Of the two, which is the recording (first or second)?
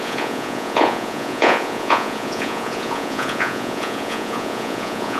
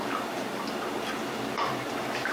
second